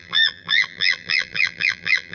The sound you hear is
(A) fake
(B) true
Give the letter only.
A